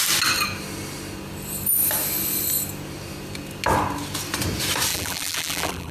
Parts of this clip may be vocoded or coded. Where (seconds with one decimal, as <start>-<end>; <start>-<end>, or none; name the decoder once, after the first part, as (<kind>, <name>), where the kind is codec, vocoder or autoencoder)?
4.9-5.9 (vocoder, BigVGAN v2)